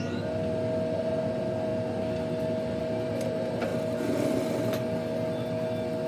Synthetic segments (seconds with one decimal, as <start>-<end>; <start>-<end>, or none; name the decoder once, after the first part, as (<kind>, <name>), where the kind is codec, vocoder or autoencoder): none